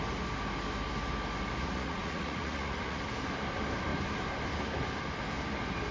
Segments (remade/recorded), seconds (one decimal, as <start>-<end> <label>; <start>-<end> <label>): 0.0-1.6 recorded; 1.6-3.1 remade; 3.1-5.9 recorded